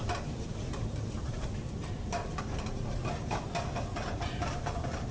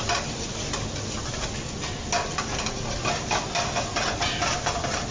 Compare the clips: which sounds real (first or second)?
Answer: second